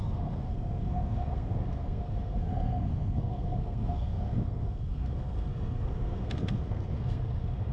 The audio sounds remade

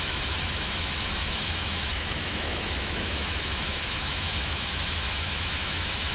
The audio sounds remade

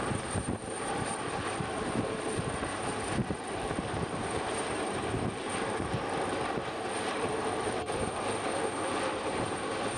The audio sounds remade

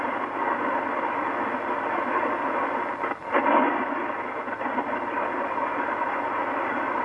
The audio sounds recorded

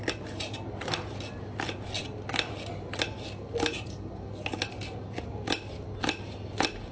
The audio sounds recorded